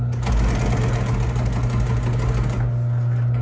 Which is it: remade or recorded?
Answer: recorded